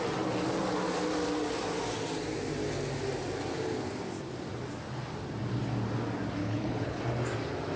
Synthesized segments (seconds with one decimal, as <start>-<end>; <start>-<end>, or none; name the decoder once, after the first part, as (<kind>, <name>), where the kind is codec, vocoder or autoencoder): 6.4-7.0 (codec, HILCodec)

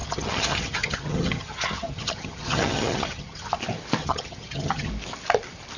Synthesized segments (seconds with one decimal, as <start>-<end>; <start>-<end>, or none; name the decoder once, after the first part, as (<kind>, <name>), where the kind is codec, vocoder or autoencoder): 0.0-3.5 (vocoder, HiFi-GAN); 4.0-4.9

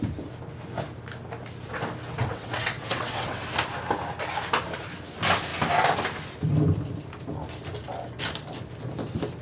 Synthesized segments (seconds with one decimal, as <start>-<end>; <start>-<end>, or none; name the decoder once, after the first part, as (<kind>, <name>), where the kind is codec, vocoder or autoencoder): 2.2-3.4 (vocoder, WaveNeXt)

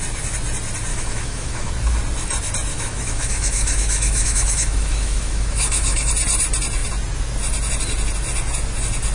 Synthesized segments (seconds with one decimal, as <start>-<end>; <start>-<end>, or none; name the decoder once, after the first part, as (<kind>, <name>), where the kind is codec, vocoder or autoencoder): 0.9-1.7 (autoencoder, DAC-VAE); 2.7-6.1

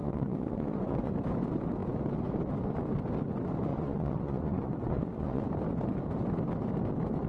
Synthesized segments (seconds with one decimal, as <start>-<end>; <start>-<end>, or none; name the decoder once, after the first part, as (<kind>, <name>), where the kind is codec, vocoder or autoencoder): 0.0-1.1 (vocoder, Vocos); 3.7-5.4

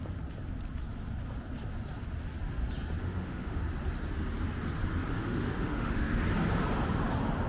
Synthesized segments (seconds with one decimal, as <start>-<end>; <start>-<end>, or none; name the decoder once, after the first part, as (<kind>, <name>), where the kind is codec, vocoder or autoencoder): 3.0-3.6 (autoencoder, DAC-VAE); 5.1-6.2

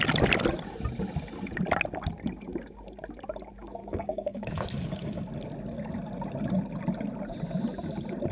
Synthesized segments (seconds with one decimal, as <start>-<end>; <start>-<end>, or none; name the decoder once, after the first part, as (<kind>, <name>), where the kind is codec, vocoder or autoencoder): 3.8-5.2 (codec, DAC)